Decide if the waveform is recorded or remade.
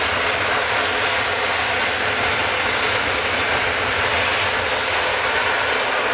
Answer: recorded